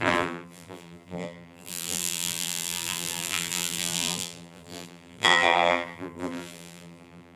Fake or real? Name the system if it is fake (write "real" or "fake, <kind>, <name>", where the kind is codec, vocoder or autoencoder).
fake, vocoder, BigVGAN v2